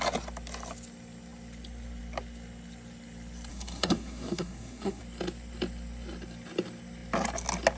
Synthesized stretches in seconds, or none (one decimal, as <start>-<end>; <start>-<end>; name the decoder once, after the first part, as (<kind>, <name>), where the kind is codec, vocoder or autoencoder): 3.5-5.0 (codec, SNAC)